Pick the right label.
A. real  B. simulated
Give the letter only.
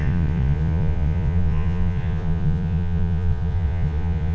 B